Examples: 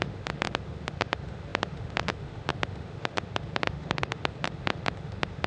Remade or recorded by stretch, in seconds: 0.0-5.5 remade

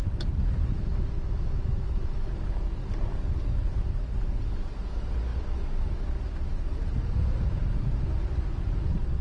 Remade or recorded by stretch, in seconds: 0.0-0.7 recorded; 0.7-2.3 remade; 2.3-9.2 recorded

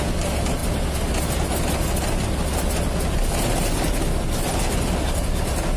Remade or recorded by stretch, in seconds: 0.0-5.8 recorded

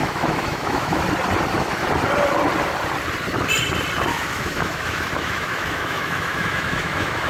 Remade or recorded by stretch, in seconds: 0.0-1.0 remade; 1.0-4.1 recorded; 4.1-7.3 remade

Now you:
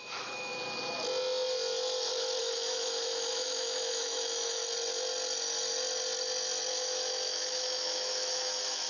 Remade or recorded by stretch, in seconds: 0.0-0.5 remade; 0.5-2.4 recorded; 2.4-4.6 remade; 4.6-6.7 recorded; 6.7-8.9 remade